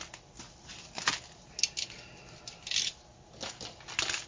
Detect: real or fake real